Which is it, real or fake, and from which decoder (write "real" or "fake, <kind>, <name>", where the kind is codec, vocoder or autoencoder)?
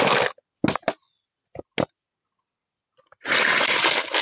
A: real